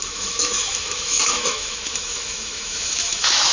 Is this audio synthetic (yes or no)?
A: yes